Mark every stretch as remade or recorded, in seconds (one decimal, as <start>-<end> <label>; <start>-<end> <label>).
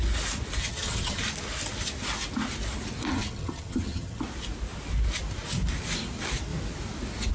0.0-0.6 recorded; 0.6-1.2 remade; 1.2-3.1 recorded; 3.1-4.2 remade; 4.2-7.3 recorded